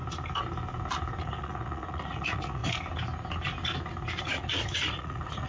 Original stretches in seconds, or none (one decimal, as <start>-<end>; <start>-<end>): 0.0-1.2; 2.6-4.2